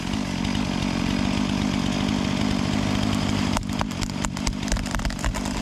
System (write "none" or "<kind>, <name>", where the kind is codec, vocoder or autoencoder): none